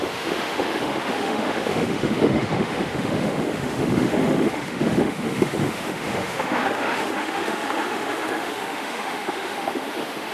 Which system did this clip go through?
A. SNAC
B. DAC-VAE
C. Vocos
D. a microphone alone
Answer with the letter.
B